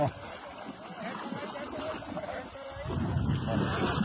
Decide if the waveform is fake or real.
real